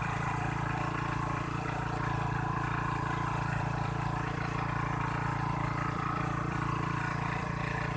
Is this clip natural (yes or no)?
no